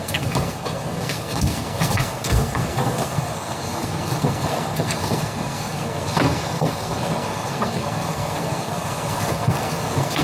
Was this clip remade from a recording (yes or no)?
yes